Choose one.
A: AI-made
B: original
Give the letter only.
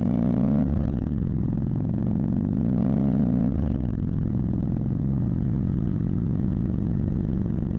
A